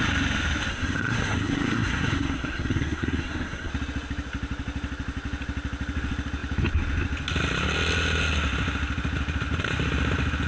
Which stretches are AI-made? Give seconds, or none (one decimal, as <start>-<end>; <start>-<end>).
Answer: 0.7-3.7